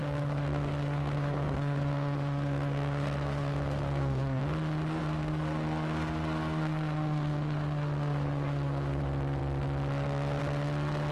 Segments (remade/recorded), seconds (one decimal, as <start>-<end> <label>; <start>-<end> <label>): 0.0-4.4 remade; 4.4-5.0 recorded; 5.0-9.0 remade; 9.0-11.1 recorded